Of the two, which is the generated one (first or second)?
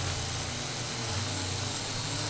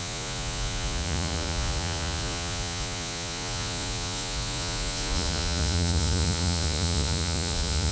second